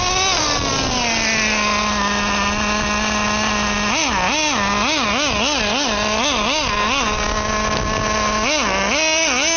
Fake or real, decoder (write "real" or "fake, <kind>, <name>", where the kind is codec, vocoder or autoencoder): real